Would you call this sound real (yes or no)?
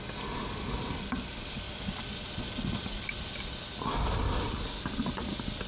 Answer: yes